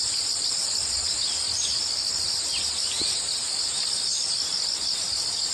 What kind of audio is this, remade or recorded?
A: recorded